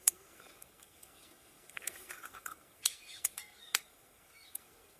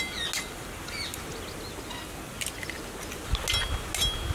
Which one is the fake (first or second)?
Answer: first